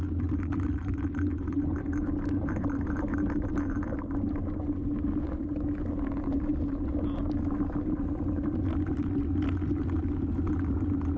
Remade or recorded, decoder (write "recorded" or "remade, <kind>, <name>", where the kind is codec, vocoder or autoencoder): recorded